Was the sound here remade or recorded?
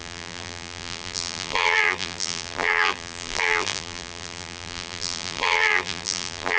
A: remade